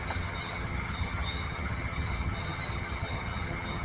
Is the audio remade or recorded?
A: remade